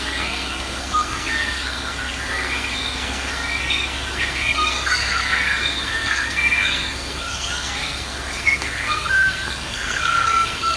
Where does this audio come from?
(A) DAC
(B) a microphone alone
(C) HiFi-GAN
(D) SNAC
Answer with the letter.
D